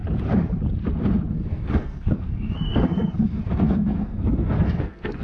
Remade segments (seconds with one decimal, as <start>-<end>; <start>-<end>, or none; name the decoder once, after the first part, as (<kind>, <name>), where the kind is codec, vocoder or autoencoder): 1.3-5.2 (codec, SNAC)